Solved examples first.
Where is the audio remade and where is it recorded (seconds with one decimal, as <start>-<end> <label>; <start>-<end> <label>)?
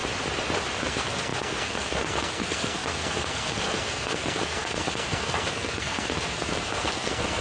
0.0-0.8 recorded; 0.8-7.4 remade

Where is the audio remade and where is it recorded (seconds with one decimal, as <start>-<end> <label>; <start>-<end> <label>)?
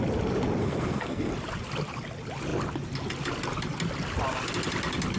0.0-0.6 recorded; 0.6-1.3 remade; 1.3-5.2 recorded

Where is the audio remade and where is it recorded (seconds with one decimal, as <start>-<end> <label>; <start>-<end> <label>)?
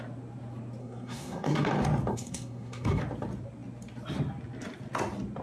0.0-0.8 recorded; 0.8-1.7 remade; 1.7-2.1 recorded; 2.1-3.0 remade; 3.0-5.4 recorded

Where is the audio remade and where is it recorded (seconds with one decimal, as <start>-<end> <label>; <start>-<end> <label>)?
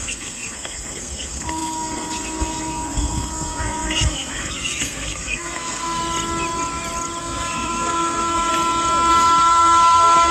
0.0-6.0 remade; 6.0-7.2 recorded; 7.2-8.5 remade; 8.5-9.1 recorded; 9.1-10.3 remade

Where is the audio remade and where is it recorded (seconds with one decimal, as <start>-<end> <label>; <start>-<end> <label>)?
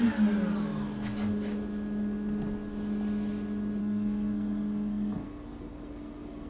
0.0-3.8 recorded; 3.8-6.5 remade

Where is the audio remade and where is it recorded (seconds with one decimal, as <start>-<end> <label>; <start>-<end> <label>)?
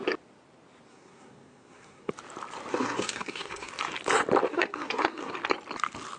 0.0-0.9 recorded; 0.9-2.1 remade; 2.1-2.7 recorded; 2.7-3.7 remade; 3.7-4.5 recorded; 4.5-5.3 remade; 5.3-6.2 recorded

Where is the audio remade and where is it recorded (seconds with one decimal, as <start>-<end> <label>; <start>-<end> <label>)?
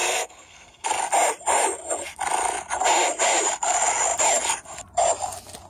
0.0-0.9 remade; 0.9-5.7 recorded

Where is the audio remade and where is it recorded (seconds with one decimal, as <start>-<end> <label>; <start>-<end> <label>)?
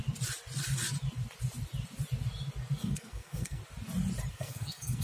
0.0-2.8 recorded; 2.8-3.6 remade; 3.6-4.3 recorded; 4.3-5.0 remade